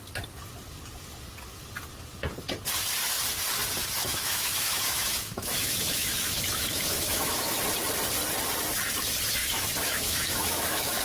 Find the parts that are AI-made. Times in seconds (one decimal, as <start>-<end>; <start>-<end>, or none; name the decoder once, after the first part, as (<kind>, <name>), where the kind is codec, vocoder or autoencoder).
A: 4.0-7.6 (autoencoder, DAC-VAE); 9.4-11.0